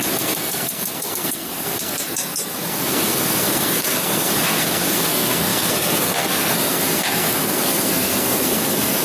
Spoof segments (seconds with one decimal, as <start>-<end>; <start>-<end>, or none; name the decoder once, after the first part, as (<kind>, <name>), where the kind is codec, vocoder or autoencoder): 0.0-9.0 (codec, SNAC)